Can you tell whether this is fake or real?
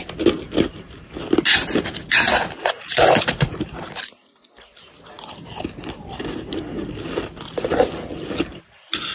real